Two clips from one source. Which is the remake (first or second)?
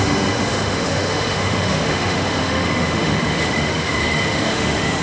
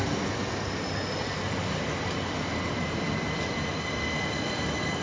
first